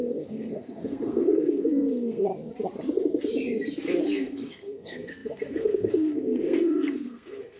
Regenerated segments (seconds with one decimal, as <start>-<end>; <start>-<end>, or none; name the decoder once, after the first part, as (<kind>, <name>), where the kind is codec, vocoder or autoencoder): 0.0-2.3 (codec, SNAC); 4.0-7.6